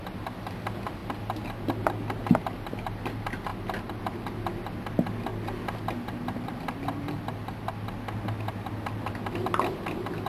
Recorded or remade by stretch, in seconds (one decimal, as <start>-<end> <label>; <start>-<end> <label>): 0.0-10.3 recorded